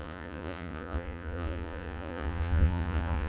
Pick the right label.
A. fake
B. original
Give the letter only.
A